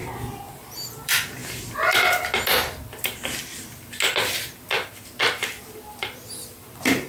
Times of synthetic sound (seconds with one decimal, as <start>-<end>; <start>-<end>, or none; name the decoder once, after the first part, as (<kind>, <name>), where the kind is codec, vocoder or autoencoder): 0.6-1.4 (vocoder, BigVGAN v2); 5.5-7.1